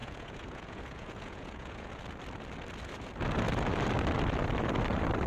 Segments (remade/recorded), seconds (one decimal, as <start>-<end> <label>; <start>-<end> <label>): 0.0-1.9 remade; 1.9-5.3 recorded